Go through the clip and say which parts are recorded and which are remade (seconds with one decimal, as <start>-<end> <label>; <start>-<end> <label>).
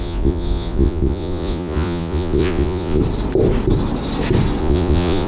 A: 0.0-3.0 remade; 3.0-4.6 recorded; 4.6-5.3 remade